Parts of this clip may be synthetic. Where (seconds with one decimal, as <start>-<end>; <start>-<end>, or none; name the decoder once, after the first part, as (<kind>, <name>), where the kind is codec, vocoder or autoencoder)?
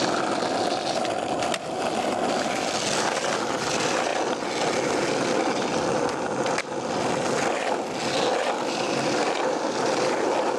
8.3-10.1 (vocoder, BigVGAN v2)